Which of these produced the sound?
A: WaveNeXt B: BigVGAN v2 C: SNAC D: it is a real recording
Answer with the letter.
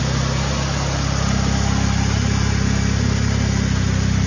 D